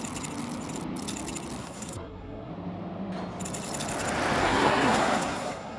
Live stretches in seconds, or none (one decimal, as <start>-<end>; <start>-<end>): 0.0-1.6; 2.5-4.4

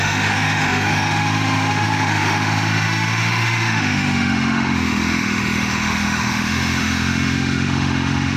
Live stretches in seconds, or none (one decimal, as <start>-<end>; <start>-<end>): none

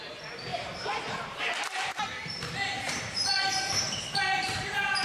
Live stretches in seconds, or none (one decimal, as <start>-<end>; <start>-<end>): none

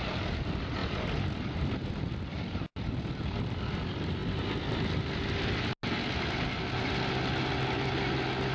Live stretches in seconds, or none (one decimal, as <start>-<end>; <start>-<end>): 0.0-8.5

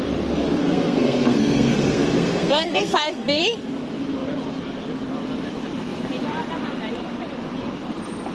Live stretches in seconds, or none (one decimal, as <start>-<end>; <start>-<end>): 0.0-0.6; 3.4-8.3

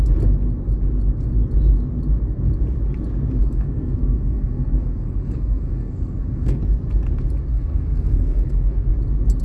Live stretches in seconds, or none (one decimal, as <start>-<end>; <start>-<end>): 0.0-3.4; 6.6-7.5; 8.9-9.4